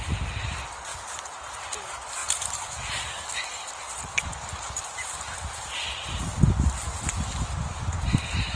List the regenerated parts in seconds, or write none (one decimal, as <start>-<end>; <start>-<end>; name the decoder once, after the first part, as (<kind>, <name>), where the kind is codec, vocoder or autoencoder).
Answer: none